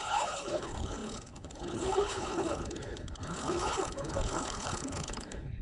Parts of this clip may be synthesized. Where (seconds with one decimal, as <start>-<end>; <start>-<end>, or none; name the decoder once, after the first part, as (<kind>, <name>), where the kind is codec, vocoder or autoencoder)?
0.0-5.6 (codec, HILCodec)